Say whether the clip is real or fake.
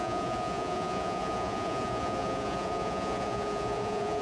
fake